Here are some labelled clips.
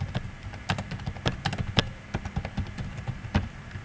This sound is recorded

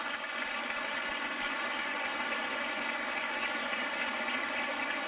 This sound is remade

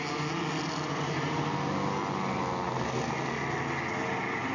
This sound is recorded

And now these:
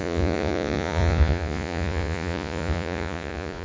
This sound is remade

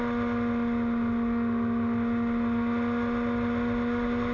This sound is recorded